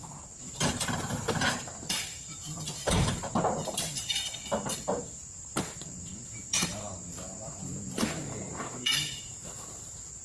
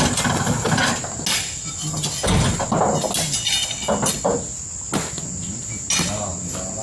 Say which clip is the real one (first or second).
second